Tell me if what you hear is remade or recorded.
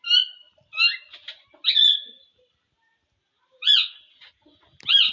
recorded